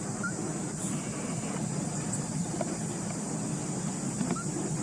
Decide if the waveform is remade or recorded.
recorded